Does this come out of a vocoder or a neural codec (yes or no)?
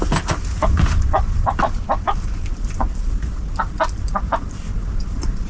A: no